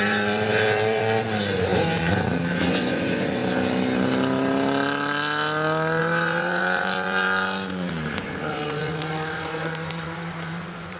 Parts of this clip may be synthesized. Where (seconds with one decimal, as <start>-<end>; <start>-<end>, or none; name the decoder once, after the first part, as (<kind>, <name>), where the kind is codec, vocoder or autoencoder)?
0.0-3.4 (vocoder, Vocos); 6.0-11.0